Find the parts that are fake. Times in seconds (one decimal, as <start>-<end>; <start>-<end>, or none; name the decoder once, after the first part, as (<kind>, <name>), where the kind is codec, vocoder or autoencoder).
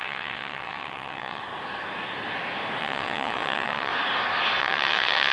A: 0.0-1.4 (vocoder, WaveNeXt); 2.8-3.9; 4.6-5.3